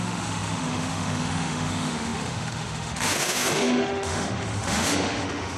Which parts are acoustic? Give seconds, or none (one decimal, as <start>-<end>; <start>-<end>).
none